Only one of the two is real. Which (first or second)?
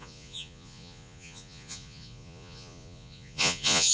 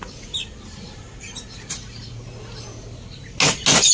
second